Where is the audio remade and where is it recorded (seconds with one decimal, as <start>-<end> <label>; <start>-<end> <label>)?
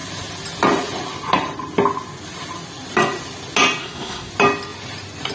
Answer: 0.0-3.8 recorded; 3.8-4.3 remade; 4.3-5.3 recorded